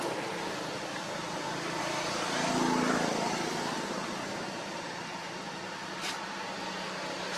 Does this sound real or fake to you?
real